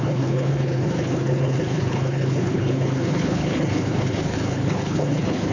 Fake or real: fake